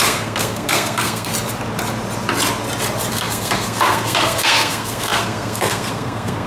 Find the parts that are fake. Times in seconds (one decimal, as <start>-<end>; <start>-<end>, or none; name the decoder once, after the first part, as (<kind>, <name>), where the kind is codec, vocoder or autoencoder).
0.0-1.3 (codec, SNAC); 3.1-6.5